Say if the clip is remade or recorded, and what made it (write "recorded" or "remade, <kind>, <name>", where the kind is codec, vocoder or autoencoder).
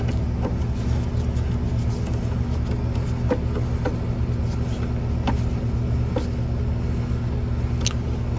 recorded